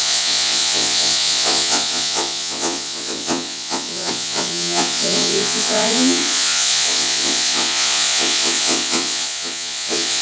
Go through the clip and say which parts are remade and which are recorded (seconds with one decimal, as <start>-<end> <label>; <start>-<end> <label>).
0.0-10.2 remade